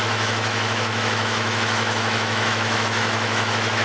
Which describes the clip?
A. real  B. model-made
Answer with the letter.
B